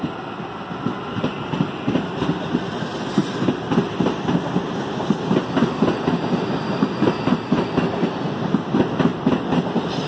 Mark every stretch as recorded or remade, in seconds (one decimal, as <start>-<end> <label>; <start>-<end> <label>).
0.0-10.1 recorded